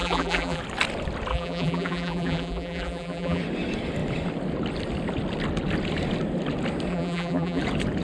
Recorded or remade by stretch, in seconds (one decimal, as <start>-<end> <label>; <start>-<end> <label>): 0.0-0.6 remade; 0.6-1.3 recorded; 1.3-3.4 remade; 3.4-6.9 recorded; 6.9-7.6 remade; 7.6-8.0 recorded